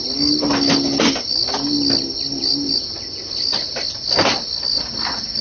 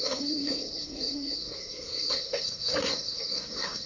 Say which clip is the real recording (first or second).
first